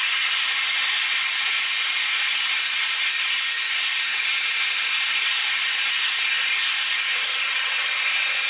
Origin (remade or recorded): recorded